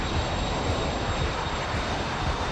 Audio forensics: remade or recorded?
recorded